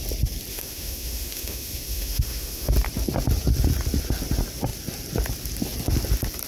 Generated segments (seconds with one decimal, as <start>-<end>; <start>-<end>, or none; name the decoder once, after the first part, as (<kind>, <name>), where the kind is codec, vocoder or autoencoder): 0.5-2.7 (autoencoder, DAC-VAE)